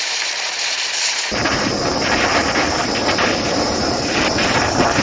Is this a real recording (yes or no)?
yes